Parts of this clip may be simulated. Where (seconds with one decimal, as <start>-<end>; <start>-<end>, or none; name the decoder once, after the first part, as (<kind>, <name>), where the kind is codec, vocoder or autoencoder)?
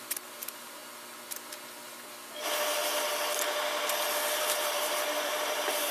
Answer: 0.0-0.8 (vocoder, BigVGAN v2); 4.3-5.9